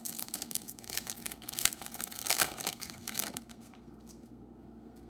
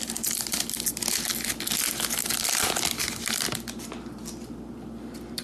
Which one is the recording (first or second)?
second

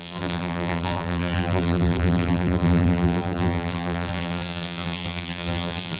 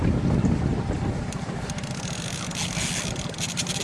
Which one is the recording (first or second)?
second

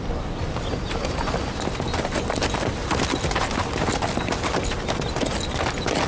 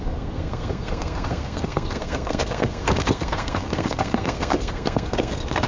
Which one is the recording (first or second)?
first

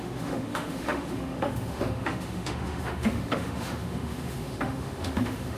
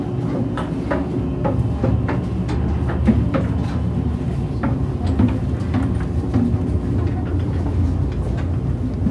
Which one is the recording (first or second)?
second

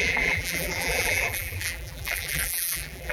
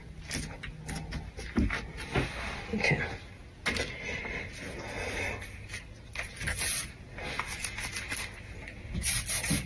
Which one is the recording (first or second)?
second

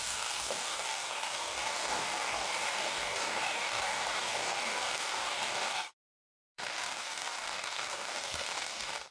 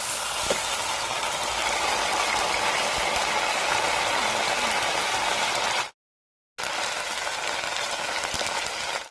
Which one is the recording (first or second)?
second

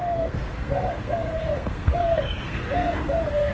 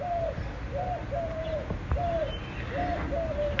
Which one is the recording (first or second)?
second